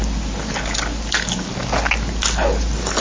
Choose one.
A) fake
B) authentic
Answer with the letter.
B